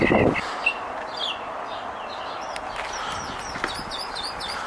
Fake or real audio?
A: real